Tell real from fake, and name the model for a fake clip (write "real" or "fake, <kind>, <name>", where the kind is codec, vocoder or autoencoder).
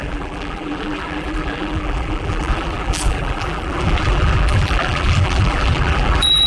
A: fake, vocoder, BigVGAN v2